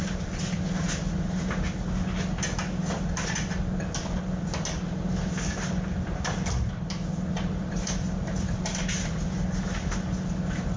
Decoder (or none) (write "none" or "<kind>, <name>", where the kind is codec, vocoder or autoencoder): none